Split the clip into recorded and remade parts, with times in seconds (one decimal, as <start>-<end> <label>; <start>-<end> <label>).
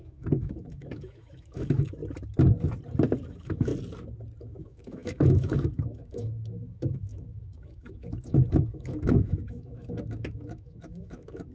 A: 0.0-2.0 remade; 2.0-3.3 recorded; 3.3-3.7 remade; 3.7-4.4 recorded; 4.4-11.5 remade